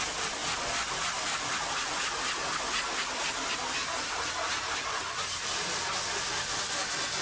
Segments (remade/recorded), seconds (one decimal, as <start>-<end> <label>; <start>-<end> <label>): 0.0-7.2 recorded